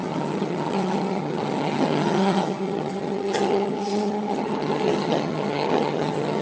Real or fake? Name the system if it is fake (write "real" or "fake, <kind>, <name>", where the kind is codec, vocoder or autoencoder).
fake, vocoder, HiFi-GAN